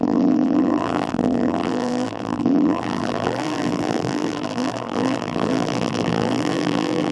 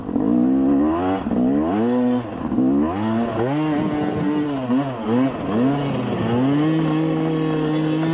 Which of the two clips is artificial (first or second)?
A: first